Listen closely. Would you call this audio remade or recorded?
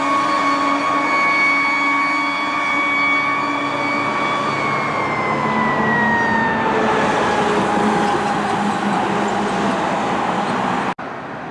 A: recorded